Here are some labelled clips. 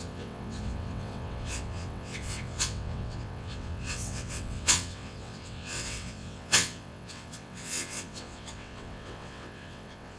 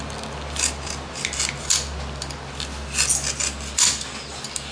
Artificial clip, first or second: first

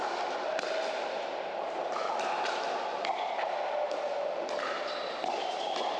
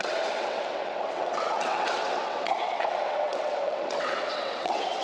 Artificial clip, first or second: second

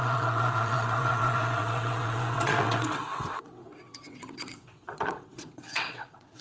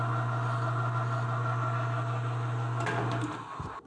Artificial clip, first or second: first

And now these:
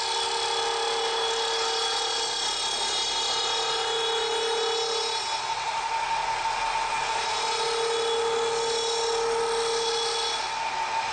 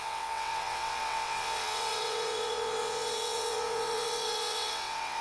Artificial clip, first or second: second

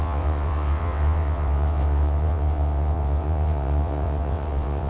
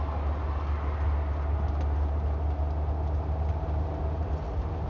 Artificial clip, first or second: first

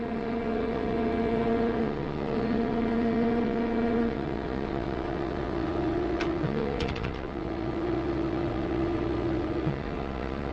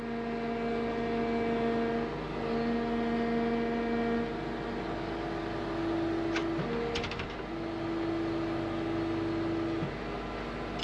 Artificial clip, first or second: first